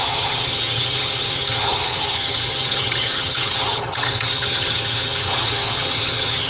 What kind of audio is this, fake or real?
fake